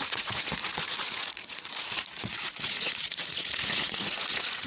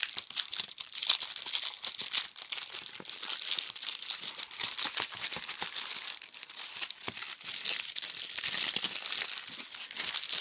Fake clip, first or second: first